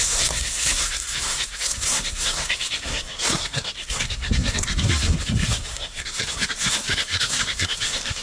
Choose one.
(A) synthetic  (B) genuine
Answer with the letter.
A